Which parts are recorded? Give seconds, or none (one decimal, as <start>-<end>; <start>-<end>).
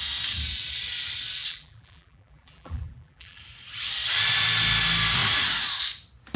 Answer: 0.0-1.5; 3.4-6.4